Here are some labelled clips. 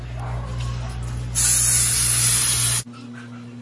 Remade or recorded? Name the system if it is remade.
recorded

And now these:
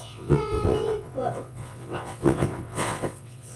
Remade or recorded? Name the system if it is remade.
remade, vocoder, WaveNeXt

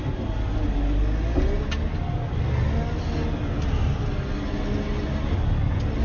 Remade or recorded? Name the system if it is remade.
recorded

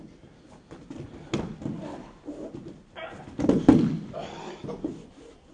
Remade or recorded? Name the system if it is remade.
recorded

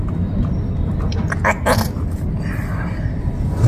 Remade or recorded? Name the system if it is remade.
recorded